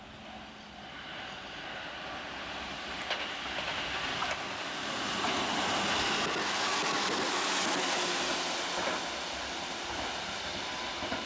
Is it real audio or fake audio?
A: real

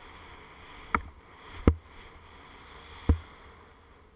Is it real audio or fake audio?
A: real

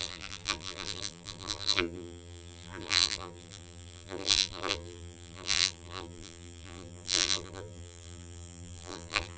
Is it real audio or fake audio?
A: fake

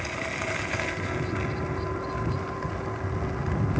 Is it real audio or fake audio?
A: real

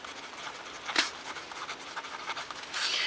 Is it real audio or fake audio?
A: real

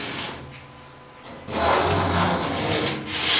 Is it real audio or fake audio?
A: real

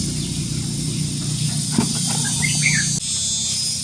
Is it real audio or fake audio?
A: real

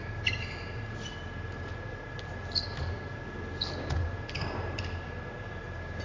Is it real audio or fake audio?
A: real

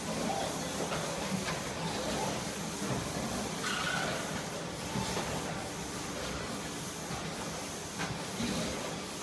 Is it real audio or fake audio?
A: real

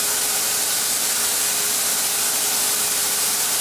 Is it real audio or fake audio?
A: fake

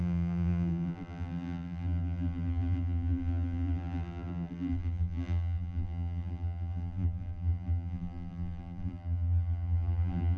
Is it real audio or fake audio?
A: fake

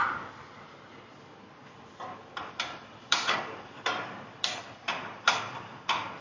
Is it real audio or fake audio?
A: fake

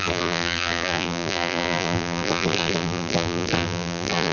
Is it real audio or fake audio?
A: fake